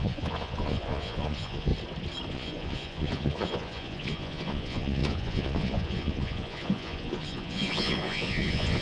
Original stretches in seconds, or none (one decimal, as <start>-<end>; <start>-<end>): 1.7-2.3